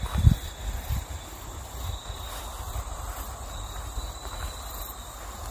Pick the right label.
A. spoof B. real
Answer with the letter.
B